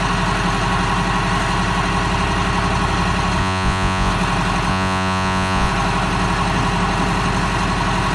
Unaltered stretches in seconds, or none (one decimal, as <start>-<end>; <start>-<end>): 0.0-3.4; 4.1-4.7; 5.7-8.1